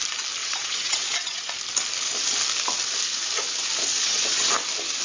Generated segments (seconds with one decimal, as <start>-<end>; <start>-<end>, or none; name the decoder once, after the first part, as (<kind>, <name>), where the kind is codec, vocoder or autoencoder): 0.4-1.5 (vocoder, WaveNeXt); 3.9-4.5